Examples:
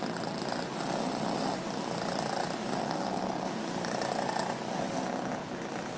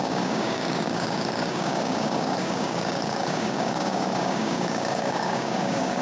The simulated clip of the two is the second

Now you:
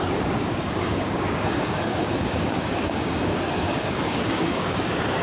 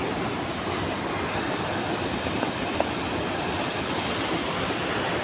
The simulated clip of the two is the first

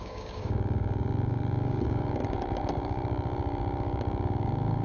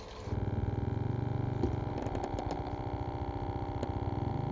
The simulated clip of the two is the first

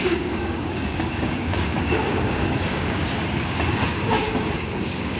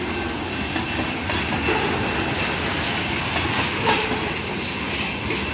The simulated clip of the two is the first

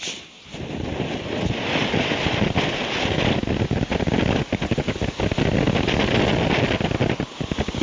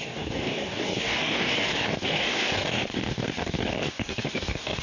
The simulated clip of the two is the second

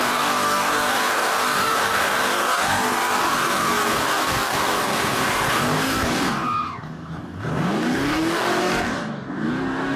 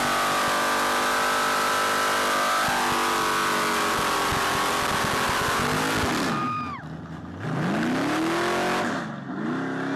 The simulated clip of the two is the first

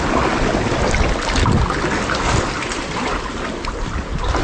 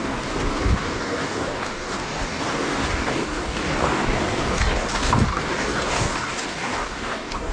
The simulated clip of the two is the second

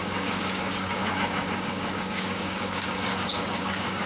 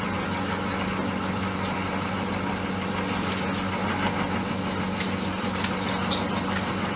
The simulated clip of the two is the first